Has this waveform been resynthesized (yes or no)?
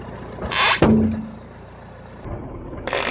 no